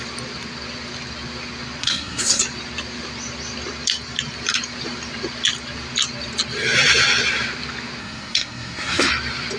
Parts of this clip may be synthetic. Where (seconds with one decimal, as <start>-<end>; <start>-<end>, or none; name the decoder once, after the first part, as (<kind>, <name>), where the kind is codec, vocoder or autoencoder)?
1.8-2.4 (codec, SNAC); 8.0-9.1

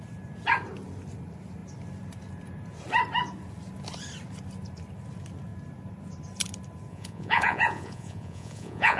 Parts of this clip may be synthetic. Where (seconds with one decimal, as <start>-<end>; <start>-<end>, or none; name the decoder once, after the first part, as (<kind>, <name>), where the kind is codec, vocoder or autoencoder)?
6.9-9.0 (vocoder, Vocos)

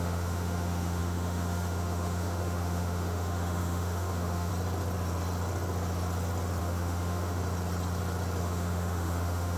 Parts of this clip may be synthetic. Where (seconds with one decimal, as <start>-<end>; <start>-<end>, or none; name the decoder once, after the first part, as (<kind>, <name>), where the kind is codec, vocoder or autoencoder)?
0.0-4.5 (autoencoder, DAC-VAE); 6.6-7.4; 8.4-9.6

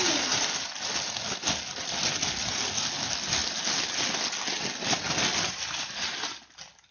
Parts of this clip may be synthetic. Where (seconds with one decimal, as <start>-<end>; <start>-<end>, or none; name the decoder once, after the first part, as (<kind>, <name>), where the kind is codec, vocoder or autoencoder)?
none

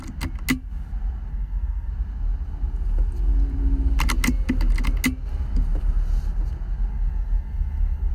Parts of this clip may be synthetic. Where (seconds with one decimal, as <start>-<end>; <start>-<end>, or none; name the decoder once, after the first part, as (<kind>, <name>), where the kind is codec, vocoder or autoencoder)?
1.3-1.9 (codec, SNAC); 6.9-8.1